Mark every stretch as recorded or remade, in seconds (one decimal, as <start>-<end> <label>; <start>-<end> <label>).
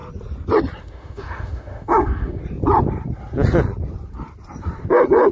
0.0-0.8 recorded; 0.8-2.4 remade; 2.4-5.3 recorded